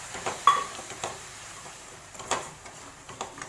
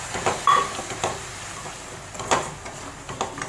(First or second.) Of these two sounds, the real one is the second